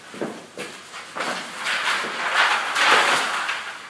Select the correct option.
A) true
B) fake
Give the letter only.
A